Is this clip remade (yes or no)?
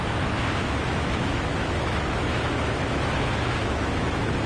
yes